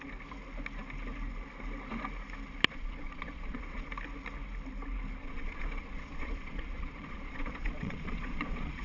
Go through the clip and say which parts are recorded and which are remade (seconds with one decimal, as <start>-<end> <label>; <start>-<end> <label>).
0.0-2.7 recorded; 2.7-3.9 remade; 3.9-5.2 recorded; 5.2-8.8 remade